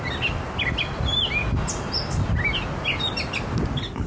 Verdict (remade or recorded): recorded